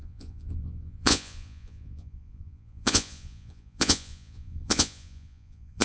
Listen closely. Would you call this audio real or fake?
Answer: fake